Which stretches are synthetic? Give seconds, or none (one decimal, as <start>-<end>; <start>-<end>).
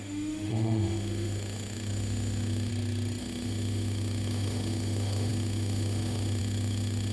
0.0-2.7; 3.2-7.1